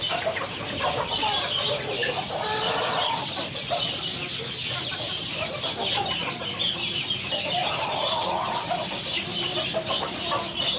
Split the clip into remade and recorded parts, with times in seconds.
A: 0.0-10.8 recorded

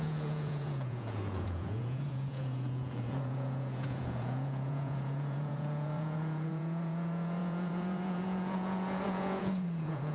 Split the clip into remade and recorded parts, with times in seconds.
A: 0.0-10.1 remade

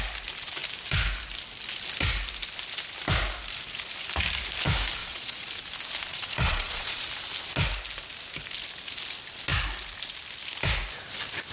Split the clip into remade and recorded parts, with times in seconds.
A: 0.0-5.0 recorded; 5.0-5.5 remade; 5.5-6.1 recorded; 6.1-7.0 remade; 7.0-11.5 recorded

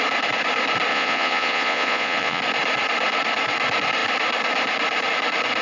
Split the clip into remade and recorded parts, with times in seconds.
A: 0.0-0.9 recorded; 0.9-2.4 remade; 2.4-5.6 recorded

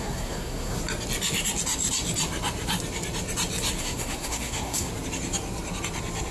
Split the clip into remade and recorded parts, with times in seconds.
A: 0.0-0.8 remade; 0.8-3.8 recorded; 3.8-4.9 remade; 4.9-6.3 recorded

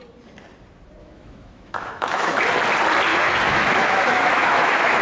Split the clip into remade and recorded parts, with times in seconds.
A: 0.0-1.0 recorded; 1.0-2.4 remade; 2.4-3.1 recorded; 3.1-5.0 remade

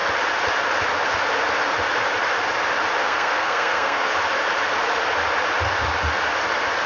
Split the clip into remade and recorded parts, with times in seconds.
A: 0.0-3.0 recorded; 3.0-4.1 remade; 4.1-6.9 recorded